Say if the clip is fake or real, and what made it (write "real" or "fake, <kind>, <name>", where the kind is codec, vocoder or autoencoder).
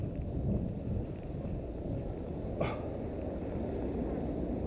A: real